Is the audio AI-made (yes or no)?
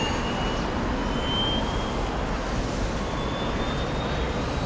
no